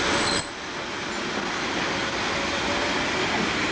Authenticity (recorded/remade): recorded